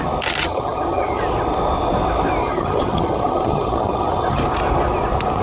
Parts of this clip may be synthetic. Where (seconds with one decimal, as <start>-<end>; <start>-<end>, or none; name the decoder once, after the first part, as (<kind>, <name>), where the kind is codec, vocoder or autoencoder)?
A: 0.4-1.2 (vocoder, HiFi-GAN); 2.4-4.4